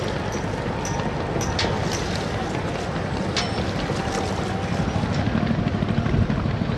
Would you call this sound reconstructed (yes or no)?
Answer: no